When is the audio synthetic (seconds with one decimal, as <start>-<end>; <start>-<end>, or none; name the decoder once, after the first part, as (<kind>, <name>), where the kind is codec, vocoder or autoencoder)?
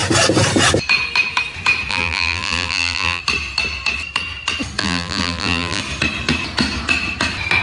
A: 1.9-3.2 (vocoder, BigVGAN v2); 4.8-5.8